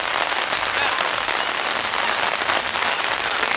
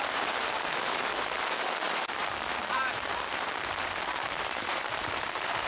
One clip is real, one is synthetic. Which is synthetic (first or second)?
second